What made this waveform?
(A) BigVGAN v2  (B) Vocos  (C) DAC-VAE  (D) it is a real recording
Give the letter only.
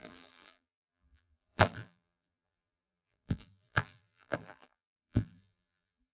A